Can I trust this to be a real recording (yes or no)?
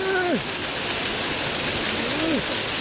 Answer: yes